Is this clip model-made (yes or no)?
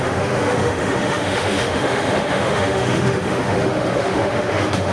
yes